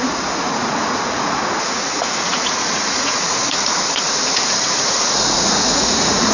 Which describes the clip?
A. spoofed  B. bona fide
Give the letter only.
A